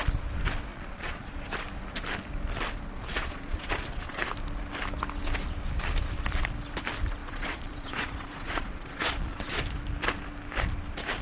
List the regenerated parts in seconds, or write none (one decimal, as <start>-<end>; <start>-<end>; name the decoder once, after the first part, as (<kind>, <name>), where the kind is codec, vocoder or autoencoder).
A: 0.7-1.4 (vocoder, Vocos); 3.1-4.3; 7.2-9.6